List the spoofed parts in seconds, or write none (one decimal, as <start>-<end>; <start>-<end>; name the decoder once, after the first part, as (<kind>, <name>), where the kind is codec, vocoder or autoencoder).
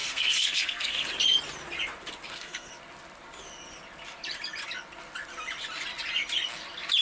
0.0-1.1 (codec, SNAC); 2.2-2.7